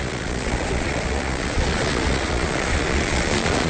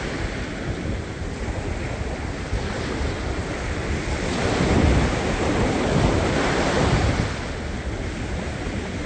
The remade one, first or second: first